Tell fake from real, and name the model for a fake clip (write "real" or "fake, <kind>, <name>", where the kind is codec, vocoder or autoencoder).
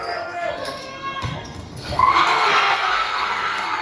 fake, codec, SNAC